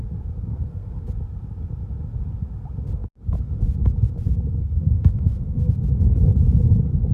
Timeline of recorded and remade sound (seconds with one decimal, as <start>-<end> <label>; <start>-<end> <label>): 0.0-0.5 recorded; 0.5-1.0 remade; 1.0-4.8 recorded; 4.8-5.7 remade; 5.7-7.1 recorded